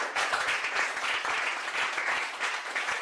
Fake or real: fake